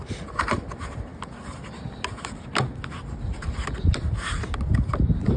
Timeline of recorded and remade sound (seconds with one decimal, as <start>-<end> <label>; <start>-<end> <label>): 0.0-5.4 recorded